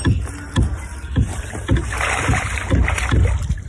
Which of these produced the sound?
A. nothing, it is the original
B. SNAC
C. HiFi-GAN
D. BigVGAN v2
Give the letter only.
A